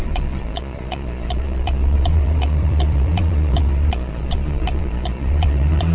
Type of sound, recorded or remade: remade